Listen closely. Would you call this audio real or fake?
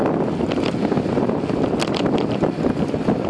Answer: real